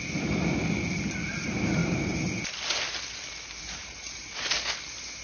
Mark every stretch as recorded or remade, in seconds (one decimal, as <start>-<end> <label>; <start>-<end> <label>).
0.0-1.8 recorded; 1.8-2.3 remade; 2.3-3.8 recorded; 3.8-4.3 remade; 4.3-5.2 recorded